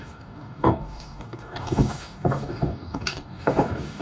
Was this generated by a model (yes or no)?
yes